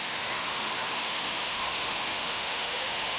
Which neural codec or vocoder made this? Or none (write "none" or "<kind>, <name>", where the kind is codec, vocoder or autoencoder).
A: autoencoder, DAC-VAE